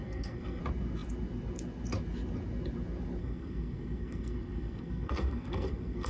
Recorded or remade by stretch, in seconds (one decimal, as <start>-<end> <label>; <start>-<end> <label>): 0.0-0.6 remade; 0.6-3.2 recorded; 3.2-6.1 remade